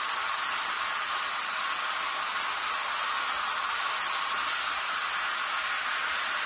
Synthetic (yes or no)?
no